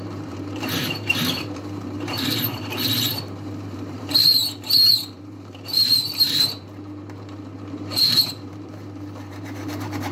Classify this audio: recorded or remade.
remade